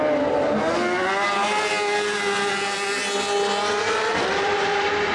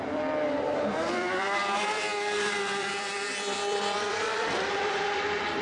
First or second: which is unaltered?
first